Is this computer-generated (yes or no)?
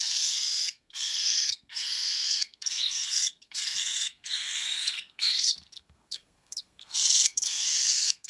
yes